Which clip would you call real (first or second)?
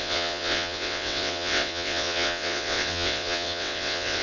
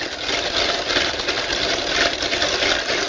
second